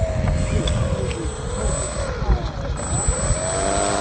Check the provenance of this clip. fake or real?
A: real